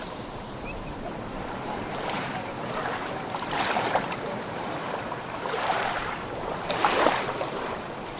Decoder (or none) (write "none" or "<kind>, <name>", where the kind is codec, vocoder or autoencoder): vocoder, BigVGAN v2